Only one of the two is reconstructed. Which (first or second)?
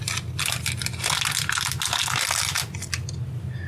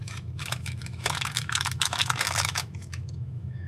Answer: second